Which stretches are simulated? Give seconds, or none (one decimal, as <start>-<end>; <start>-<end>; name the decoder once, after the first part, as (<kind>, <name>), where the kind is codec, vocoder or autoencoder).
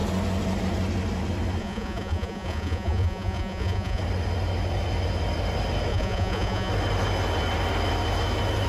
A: 1.6-4.0 (vocoder, Vocos); 5.9-6.7